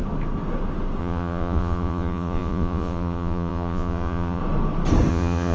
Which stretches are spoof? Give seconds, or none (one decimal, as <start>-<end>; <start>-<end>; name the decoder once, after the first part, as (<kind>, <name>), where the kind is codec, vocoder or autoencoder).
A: 1.0-4.4 (vocoder, Vocos); 5.1-5.5